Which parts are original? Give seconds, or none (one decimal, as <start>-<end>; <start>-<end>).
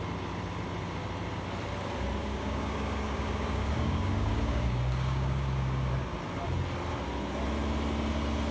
0.0-2.2; 5.9-8.5